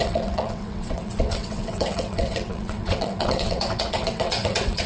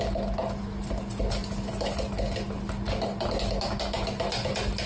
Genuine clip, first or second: second